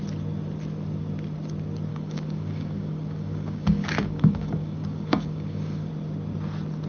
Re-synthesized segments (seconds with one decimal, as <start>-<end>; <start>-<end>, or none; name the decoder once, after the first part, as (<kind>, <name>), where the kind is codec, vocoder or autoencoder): 1.9-5.9 (codec, DAC)